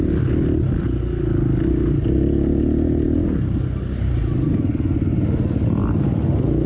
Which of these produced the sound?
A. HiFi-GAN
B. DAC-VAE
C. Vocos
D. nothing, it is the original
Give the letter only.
D